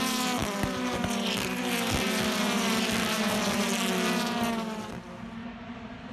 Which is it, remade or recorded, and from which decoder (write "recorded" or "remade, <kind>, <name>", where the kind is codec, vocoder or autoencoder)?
recorded